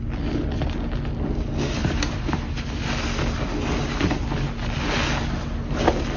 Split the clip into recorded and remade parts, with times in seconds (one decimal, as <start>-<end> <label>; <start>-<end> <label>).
0.0-1.8 recorded; 1.8-2.9 remade; 2.9-6.2 recorded